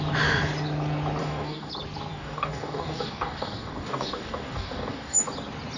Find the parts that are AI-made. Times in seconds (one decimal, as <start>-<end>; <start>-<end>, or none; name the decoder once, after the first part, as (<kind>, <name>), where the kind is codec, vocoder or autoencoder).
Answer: 1.2-1.7 (codec, DAC); 2.1-5.2